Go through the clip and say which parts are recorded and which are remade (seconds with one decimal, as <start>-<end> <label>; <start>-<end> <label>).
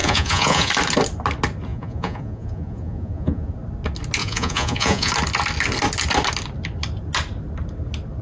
0.0-0.7 remade; 0.7-1.7 recorded; 1.7-3.5 remade; 3.5-4.2 recorded; 4.2-5.1 remade; 5.1-8.2 recorded